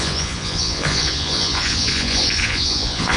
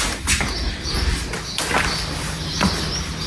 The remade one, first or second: first